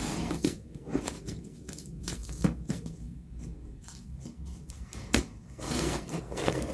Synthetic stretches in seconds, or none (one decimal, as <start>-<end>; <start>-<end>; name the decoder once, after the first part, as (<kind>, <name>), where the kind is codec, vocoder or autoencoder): 0.0-6.7 (codec, SNAC)